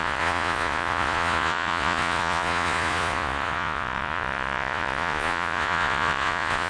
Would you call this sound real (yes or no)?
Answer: no